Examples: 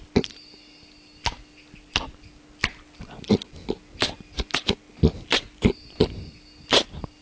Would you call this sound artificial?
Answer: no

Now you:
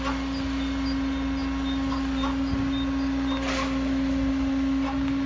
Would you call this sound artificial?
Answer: no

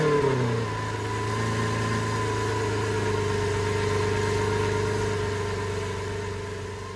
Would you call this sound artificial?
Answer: no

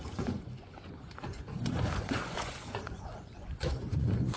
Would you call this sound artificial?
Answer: yes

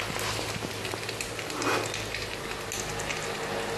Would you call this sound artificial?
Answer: no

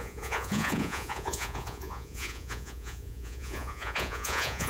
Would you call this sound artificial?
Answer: yes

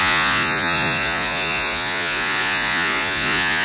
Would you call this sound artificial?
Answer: yes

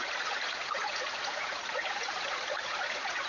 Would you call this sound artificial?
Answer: yes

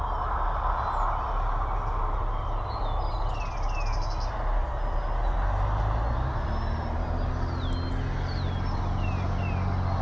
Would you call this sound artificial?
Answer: no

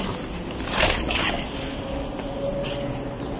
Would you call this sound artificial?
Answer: no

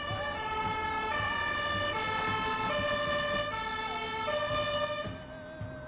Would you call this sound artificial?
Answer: no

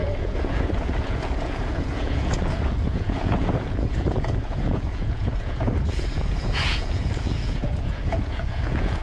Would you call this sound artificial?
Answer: yes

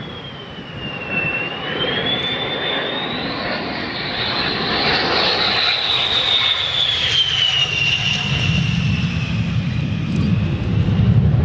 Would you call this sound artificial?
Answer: no